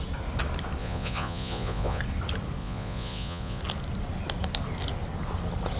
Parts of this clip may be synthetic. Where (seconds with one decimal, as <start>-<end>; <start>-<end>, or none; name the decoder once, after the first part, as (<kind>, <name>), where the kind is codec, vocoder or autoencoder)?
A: 0.8-2.0 (vocoder, Vocos); 2.6-3.6